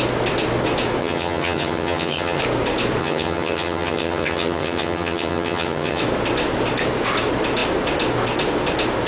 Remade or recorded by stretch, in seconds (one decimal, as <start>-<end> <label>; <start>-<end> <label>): 0.0-1.0 recorded; 1.0-2.4 remade; 2.4-3.0 recorded; 3.0-6.0 remade; 6.0-9.1 recorded